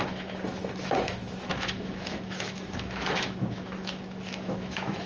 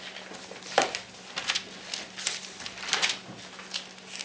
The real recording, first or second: second